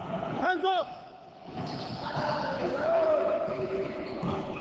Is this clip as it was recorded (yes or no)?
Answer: no